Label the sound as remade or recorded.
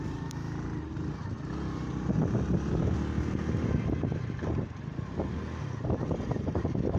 recorded